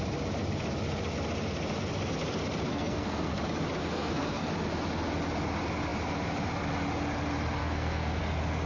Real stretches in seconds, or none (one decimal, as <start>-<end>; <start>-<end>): 0.0-2.7; 3.4-3.8; 4.5-7.6; 8.2-8.7